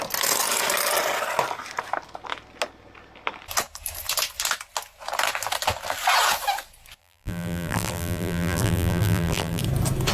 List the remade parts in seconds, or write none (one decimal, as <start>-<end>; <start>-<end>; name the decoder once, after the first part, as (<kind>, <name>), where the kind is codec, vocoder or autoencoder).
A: 7.0-9.6 (vocoder, BigVGAN v2)